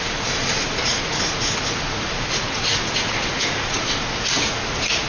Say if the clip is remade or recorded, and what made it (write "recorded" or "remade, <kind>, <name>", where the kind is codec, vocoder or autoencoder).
remade, vocoder, Vocos